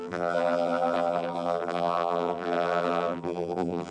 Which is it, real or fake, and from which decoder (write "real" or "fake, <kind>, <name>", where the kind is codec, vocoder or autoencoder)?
fake, vocoder, BigVGAN v2